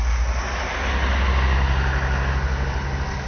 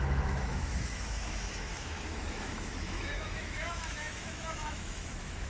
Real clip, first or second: first